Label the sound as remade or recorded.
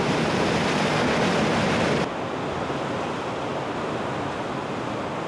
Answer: recorded